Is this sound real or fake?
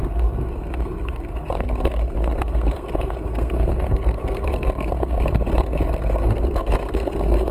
fake